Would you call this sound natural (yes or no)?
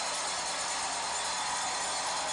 yes